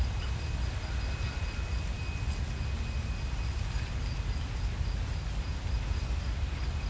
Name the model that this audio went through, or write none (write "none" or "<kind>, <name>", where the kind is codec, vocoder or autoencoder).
none